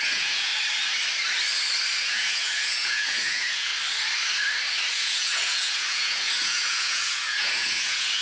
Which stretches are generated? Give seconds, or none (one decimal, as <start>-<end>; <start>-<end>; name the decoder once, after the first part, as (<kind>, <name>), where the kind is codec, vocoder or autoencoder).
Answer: 0.0-0.5 (vocoder, Vocos); 2.0-3.7; 4.9-8.2

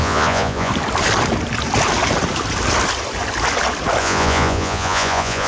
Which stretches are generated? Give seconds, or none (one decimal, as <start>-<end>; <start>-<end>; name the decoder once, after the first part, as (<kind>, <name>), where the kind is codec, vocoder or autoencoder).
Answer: 0.0-0.7 (vocoder, Vocos); 4.0-5.5

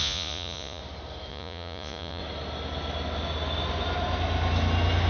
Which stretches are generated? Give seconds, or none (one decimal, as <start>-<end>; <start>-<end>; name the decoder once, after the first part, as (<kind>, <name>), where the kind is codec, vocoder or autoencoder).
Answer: 0.0-0.8 (vocoder, Vocos); 1.3-2.2